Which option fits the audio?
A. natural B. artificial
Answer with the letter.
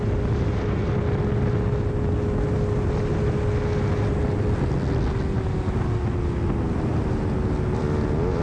A